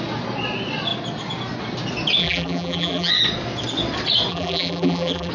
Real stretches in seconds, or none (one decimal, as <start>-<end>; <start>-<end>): 0.0-2.2; 3.1-4.3